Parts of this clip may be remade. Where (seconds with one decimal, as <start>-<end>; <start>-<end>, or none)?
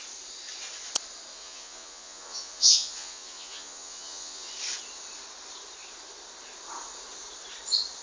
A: 1.3-4.5